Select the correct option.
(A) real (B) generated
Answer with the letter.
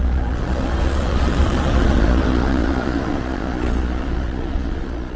B